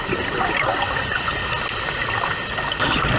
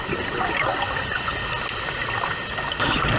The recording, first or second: second